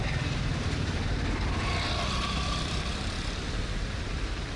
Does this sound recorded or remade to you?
recorded